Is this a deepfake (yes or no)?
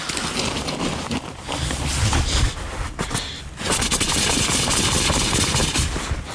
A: no